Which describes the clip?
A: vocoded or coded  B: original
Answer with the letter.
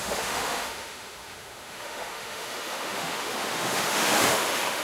A